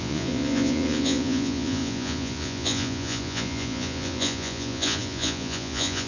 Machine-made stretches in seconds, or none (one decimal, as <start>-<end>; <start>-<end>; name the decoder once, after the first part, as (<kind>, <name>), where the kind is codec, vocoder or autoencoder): 0.0-6.1 (vocoder, Vocos)